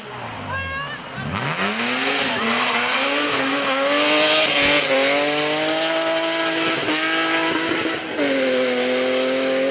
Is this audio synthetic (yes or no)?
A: no